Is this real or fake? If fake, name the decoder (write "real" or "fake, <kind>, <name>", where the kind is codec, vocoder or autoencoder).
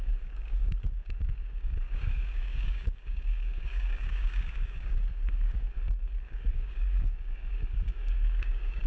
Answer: fake, codec, DAC